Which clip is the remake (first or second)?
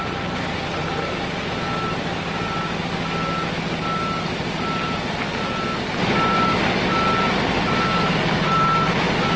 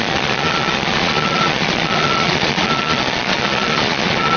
second